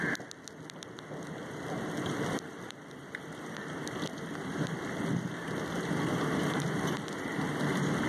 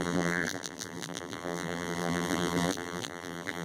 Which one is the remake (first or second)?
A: second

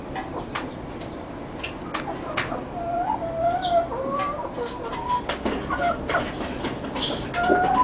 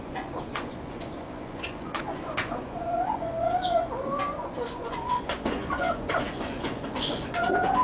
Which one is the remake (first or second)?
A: second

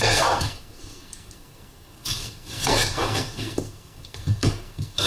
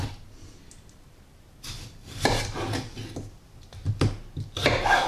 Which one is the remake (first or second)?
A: first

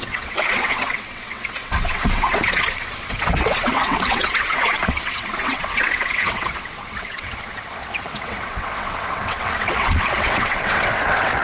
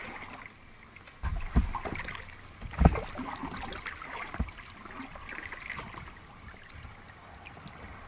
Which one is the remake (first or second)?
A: first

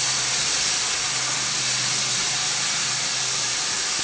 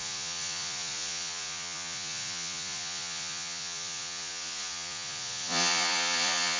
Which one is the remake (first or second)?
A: second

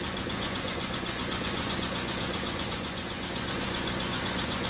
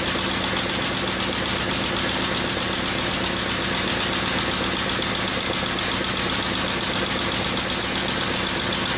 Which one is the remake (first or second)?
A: first